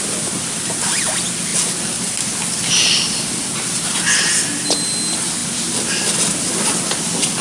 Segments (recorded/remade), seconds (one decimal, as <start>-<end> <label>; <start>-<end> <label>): 0.0-7.4 recorded